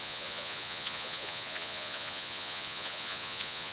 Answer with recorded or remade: remade